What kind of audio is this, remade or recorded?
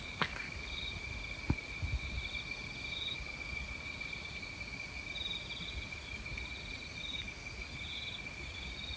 recorded